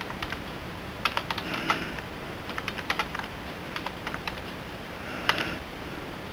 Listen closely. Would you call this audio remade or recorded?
remade